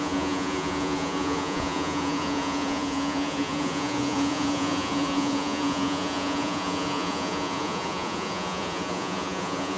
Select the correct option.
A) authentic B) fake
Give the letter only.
B